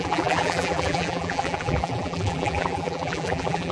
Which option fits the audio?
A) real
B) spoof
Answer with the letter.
B